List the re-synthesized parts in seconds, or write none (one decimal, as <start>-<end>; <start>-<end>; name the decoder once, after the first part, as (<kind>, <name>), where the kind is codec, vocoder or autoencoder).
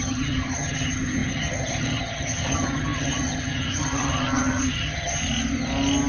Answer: 0.0-5.2 (vocoder, HiFi-GAN)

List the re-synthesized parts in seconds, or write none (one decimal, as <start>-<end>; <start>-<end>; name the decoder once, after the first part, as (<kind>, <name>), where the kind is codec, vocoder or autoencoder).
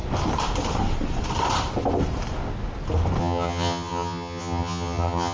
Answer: 3.2-5.3 (vocoder, HiFi-GAN)